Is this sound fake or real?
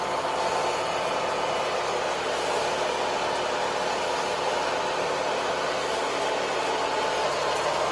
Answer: real